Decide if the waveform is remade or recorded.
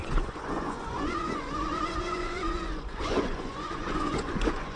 remade